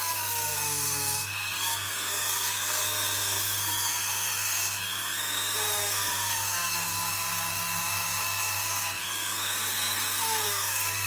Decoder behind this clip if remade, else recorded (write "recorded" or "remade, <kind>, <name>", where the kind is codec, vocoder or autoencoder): remade, codec, SNAC